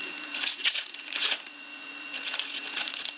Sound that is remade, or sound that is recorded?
remade